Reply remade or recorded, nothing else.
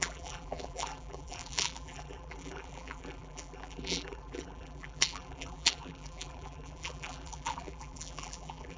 remade